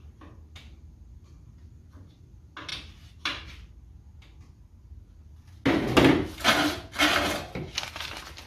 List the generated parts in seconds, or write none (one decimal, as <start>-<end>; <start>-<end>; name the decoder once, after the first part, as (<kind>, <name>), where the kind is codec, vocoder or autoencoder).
none